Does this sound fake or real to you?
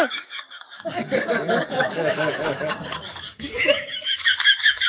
fake